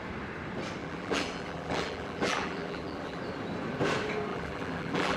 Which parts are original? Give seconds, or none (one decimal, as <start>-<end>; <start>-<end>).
0.0-0.8; 3.2-4.3